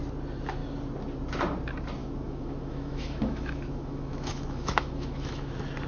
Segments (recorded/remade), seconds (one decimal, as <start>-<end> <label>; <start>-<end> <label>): 0.0-2.0 recorded; 2.0-5.5 remade; 5.5-5.9 recorded